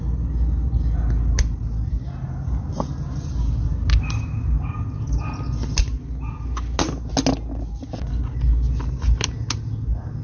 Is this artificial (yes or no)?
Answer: no